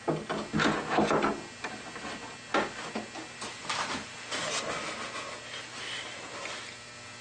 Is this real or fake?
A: real